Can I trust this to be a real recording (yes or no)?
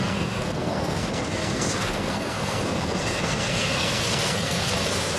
no